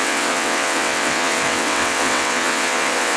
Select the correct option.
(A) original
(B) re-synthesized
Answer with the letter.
B